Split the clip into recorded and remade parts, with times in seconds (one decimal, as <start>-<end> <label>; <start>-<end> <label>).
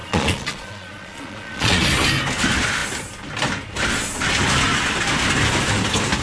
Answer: 0.0-1.8 remade; 1.8-6.2 recorded